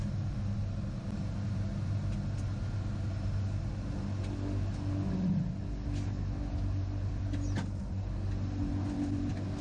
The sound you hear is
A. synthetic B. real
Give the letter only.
B